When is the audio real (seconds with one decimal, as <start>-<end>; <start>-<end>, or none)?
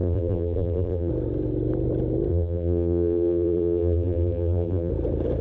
1.1-2.3; 4.9-5.4